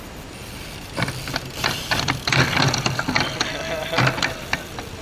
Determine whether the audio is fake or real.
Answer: fake